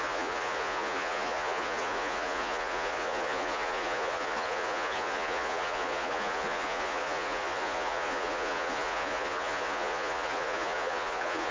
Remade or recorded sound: remade